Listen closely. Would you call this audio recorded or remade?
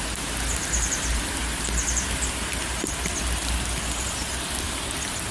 recorded